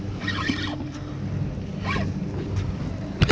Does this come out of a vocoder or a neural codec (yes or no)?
no